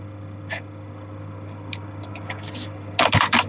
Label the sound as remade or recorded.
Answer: recorded